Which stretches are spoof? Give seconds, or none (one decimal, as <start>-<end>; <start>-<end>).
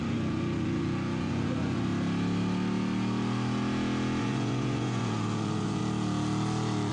0.0-1.9; 4.2-5.8